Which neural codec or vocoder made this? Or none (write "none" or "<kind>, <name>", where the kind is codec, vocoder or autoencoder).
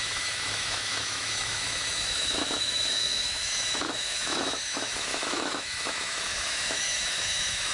autoencoder, DAC-VAE